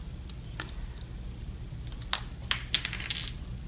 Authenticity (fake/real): real